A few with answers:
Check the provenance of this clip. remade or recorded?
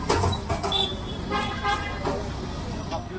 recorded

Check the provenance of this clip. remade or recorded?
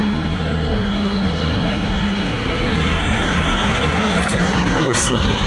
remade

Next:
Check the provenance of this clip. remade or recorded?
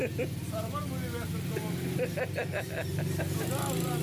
recorded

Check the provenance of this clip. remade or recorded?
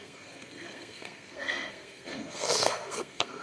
remade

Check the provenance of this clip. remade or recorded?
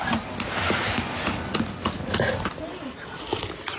recorded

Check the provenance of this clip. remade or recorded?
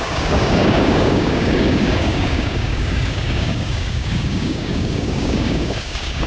remade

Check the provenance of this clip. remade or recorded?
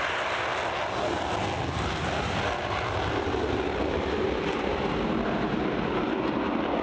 recorded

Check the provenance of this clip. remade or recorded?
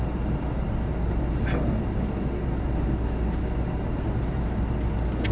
recorded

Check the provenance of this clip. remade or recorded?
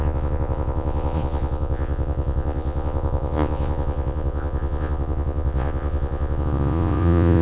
remade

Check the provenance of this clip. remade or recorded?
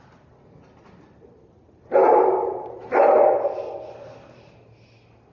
recorded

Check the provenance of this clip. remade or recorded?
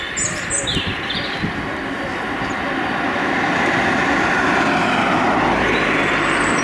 recorded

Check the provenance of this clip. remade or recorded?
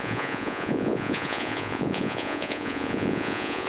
remade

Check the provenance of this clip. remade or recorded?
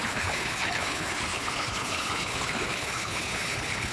remade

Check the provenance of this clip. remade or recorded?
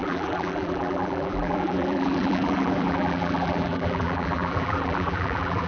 remade